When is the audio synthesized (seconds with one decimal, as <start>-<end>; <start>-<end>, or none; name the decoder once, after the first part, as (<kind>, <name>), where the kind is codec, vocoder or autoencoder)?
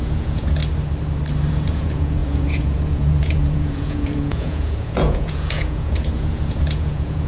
0.0-0.6 (vocoder, Vocos); 1.5-7.3